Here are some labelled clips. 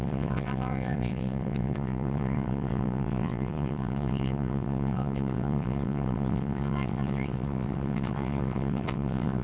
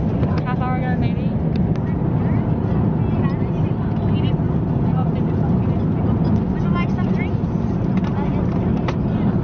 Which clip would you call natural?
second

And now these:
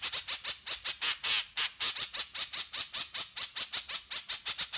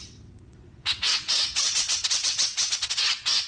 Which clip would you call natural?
first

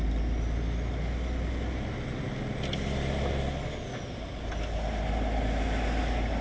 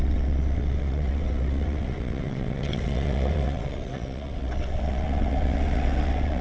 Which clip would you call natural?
first